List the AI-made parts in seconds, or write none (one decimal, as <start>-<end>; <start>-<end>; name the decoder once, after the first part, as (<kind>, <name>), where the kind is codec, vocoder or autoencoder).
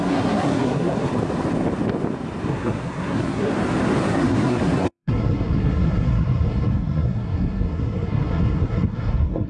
0.0-1.1 (codec, SNAC); 2.5-3.5; 4.0-9.5